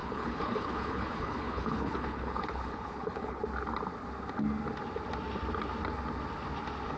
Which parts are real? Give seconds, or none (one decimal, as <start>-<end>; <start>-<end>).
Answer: 3.4-7.0